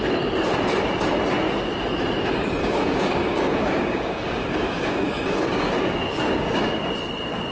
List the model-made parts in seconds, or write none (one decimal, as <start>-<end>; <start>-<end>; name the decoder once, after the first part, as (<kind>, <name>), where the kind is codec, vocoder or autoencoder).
2.6-6.9 (codec, DAC)